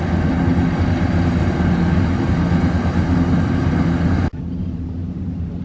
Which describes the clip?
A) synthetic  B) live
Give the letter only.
B